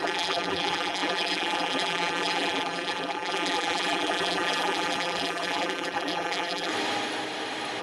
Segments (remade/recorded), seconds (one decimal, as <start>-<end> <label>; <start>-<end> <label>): 0.0-6.7 remade; 6.7-7.8 recorded